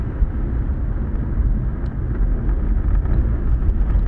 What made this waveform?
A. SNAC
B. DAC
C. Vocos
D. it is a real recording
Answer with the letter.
D